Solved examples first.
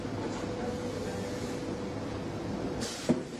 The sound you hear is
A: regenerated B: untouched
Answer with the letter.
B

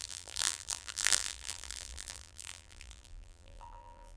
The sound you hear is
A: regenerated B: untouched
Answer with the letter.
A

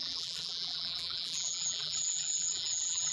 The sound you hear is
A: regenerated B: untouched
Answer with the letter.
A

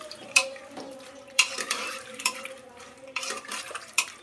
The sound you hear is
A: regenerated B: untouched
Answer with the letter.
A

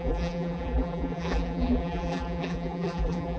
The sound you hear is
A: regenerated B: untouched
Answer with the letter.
A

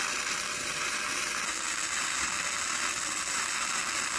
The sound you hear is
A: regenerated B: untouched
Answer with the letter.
A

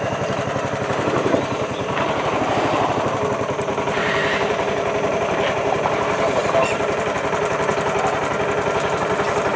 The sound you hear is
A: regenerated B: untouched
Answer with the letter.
A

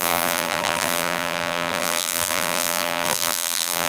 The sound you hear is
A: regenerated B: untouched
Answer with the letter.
A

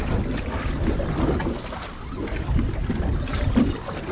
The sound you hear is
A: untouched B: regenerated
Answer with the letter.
A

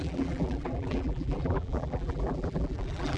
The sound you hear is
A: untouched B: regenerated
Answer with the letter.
B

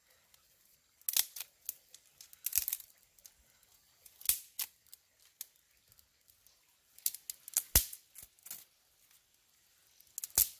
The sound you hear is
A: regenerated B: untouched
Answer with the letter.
B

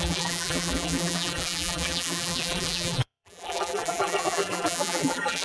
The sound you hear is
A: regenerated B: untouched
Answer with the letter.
A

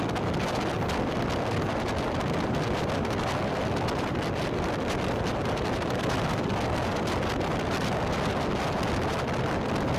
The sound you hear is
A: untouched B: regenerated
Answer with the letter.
A